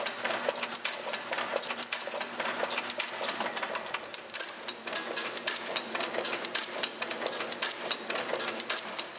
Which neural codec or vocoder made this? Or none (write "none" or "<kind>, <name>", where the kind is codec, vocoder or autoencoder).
none